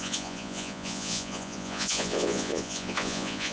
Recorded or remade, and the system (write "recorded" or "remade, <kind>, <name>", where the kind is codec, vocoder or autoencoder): remade, vocoder, Vocos